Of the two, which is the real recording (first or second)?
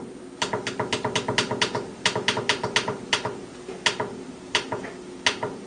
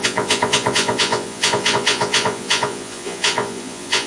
first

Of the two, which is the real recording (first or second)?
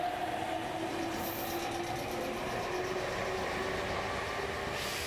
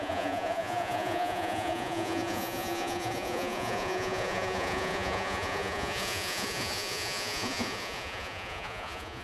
first